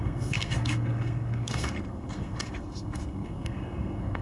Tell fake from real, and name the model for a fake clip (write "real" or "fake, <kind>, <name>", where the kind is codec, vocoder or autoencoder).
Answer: fake, codec, SNAC